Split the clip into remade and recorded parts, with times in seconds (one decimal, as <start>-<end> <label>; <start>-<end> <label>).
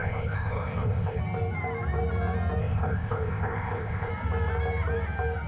0.0-1.2 remade; 1.2-2.6 recorded; 2.6-4.1 remade; 4.1-5.5 recorded